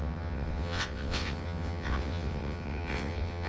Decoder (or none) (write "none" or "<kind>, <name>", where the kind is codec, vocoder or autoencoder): vocoder, WaveNeXt